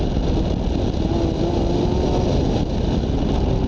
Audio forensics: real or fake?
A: real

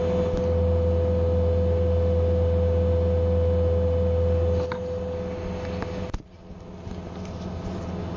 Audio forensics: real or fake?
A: real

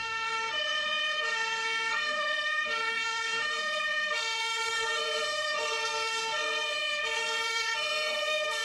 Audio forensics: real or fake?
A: fake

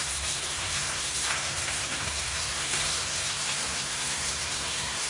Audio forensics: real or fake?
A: fake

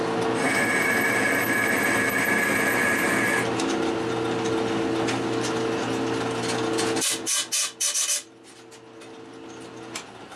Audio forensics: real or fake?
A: real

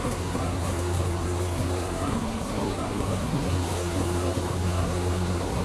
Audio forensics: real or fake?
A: fake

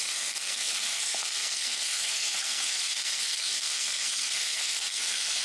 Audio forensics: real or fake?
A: fake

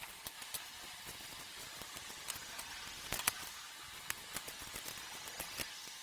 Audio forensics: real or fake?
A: real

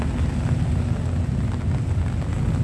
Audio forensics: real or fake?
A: real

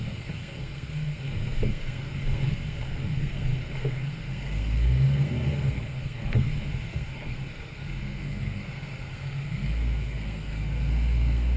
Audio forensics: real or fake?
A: fake